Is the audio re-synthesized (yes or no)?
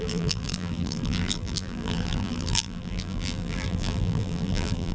yes